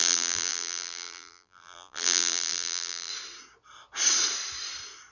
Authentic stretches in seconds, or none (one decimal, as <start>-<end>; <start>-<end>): 3.1-5.1